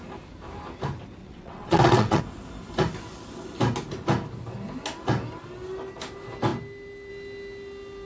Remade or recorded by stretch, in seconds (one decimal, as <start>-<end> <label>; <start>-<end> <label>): 0.0-1.2 recorded; 1.2-2.2 remade; 2.2-8.1 recorded